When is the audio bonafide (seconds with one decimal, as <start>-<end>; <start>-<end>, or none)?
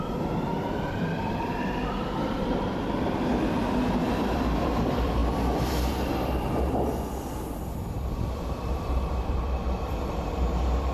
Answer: 3.3-4.2; 5.2-8.8